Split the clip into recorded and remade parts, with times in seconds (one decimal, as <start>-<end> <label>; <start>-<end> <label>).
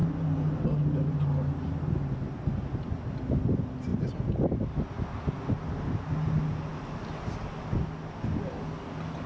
0.0-9.3 recorded